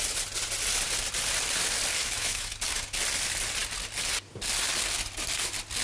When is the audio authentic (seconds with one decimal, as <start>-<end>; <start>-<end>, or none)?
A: 0.0-2.0; 2.5-5.8